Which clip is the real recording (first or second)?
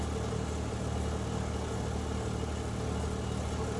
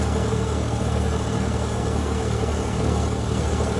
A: first